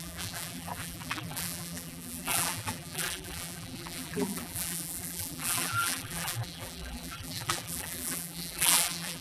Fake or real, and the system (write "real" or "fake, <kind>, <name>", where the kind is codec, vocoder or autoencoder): fake, vocoder, BigVGAN v2